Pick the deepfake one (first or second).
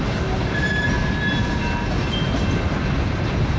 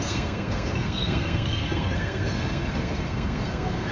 second